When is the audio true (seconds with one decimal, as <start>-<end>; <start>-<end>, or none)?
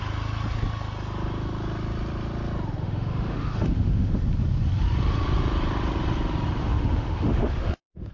0.0-2.8; 4.2-6.6